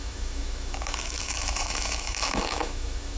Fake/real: fake